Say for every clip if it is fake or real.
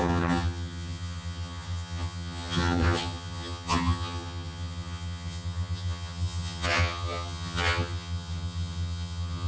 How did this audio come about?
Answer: fake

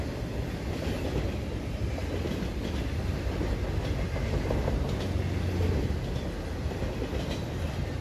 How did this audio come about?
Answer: real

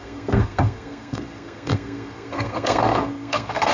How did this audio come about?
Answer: fake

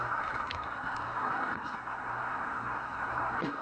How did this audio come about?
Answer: fake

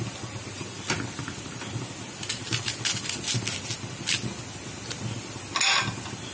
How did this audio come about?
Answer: real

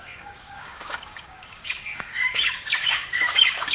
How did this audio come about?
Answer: fake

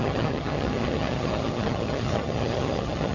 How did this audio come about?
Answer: fake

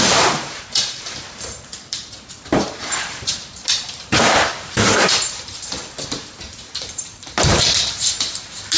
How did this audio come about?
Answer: fake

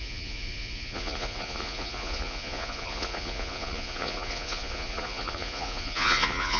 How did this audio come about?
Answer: fake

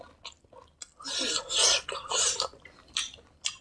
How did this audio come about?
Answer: real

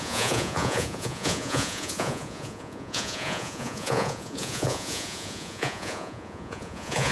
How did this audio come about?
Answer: fake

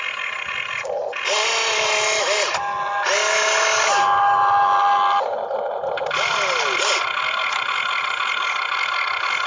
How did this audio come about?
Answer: real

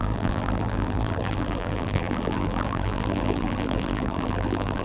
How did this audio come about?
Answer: fake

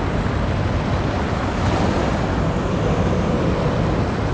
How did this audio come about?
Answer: real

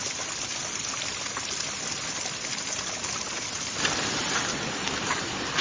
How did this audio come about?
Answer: real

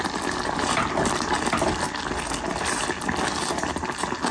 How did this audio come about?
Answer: real